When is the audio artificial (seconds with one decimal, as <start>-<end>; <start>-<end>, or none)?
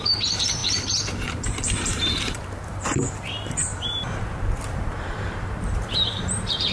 0.0-6.7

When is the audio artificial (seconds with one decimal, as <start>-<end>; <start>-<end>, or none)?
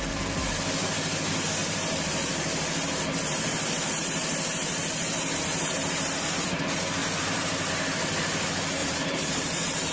1.6-6.6; 7.0-7.7; 8.8-9.9